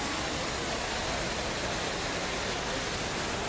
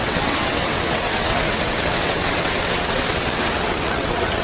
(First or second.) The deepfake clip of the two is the second